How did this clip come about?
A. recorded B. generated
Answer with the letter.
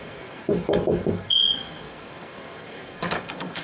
B